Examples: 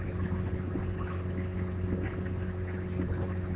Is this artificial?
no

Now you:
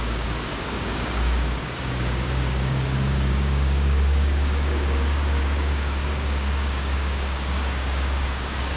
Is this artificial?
yes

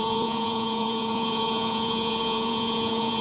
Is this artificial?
yes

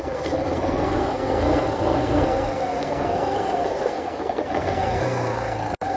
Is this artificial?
yes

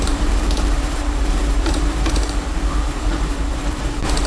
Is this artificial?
yes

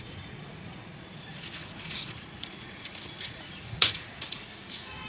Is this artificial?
yes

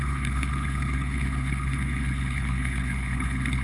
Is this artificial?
yes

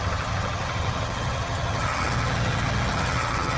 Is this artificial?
yes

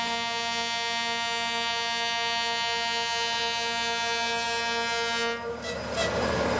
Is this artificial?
no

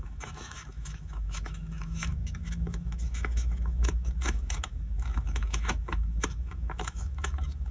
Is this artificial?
yes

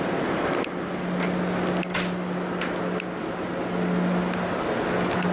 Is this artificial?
no